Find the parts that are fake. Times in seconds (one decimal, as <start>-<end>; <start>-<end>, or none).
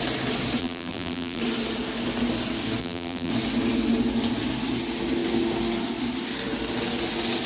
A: 0.6-1.4; 2.8-3.3